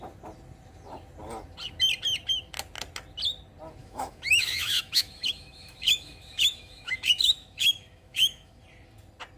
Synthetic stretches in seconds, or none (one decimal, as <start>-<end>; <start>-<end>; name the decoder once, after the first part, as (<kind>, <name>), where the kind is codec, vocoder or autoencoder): 3.8-8.6 (autoencoder, DAC-VAE)